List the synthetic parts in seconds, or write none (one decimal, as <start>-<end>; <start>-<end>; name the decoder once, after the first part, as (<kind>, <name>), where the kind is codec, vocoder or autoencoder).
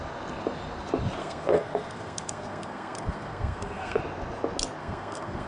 1.2-4.0 (codec, SNAC); 4.8-5.5